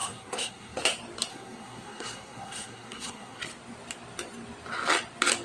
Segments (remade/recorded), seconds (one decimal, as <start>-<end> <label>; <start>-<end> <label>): 0.0-0.8 remade; 0.8-1.3 recorded; 1.3-3.4 remade; 3.4-5.4 recorded